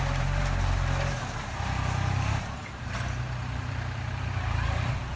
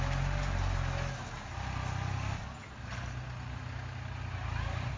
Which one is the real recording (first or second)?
second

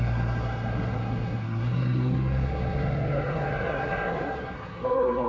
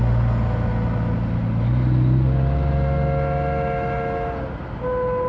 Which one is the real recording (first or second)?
second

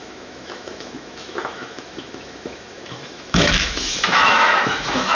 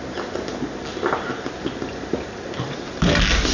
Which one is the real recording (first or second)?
second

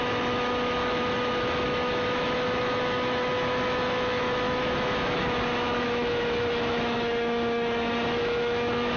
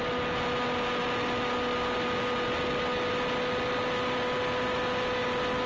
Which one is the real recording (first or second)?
second